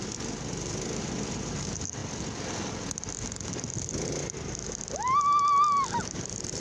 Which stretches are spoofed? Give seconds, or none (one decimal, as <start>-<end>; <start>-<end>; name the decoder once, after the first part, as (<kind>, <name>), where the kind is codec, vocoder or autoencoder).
0.0-2.0 (vocoder, BigVGAN v2); 6.0-6.6

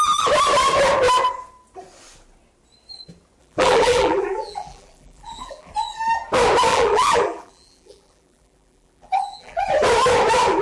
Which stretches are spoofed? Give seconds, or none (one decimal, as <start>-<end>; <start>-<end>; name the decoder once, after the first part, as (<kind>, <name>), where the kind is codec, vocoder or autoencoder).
3.4-5.7 (vocoder, BigVGAN v2); 6.7-9.6

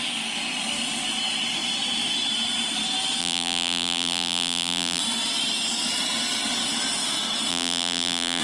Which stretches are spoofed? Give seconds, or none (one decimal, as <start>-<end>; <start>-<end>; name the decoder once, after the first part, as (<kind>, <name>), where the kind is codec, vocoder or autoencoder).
3.2-5.0 (vocoder, BigVGAN v2); 7.5-8.4

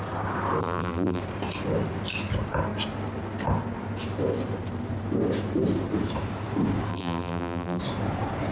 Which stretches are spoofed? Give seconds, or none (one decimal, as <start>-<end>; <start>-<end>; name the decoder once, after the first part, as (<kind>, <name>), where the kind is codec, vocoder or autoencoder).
0.6-1.2 (vocoder, BigVGAN v2); 6.9-7.8

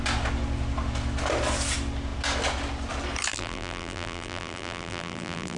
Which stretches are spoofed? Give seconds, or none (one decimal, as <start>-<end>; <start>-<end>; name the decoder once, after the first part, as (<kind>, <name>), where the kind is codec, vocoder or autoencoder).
3.3-5.6 (vocoder, BigVGAN v2)

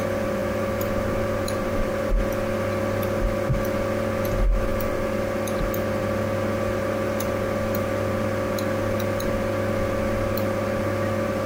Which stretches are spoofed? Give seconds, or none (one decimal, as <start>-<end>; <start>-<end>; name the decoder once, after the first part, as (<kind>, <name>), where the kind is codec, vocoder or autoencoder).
0.4-2.0 (vocoder, BigVGAN v2)

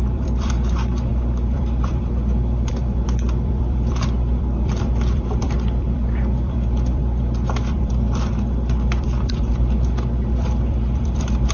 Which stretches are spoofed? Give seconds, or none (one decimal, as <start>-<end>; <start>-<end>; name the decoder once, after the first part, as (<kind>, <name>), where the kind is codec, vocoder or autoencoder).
0.0-7.0 (vocoder, BigVGAN v2); 7.7-11.5

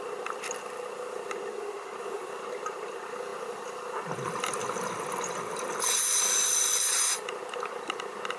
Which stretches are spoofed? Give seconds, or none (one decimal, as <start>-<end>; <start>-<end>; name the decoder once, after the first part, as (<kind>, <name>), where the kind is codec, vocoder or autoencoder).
none